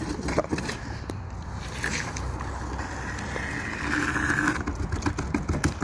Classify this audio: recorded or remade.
recorded